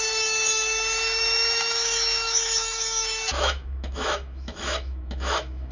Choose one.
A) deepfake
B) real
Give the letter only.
A